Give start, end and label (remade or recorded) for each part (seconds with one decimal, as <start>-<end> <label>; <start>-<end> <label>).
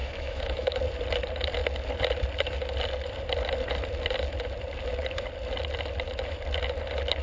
0.0-0.8 remade; 0.8-7.2 recorded